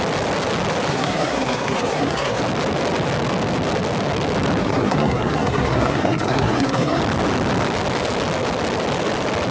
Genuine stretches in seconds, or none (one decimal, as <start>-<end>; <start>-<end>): 0.0-0.9; 2.4-4.6; 7.0-9.5